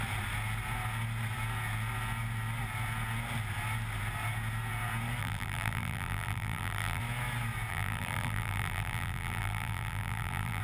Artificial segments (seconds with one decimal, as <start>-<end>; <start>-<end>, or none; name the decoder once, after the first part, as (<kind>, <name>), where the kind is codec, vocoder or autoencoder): 5.2-7.0 (vocoder, BigVGAN v2); 7.7-10.6